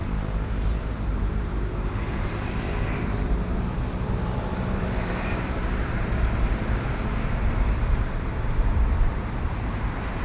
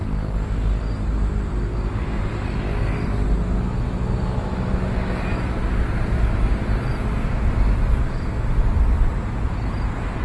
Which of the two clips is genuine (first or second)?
second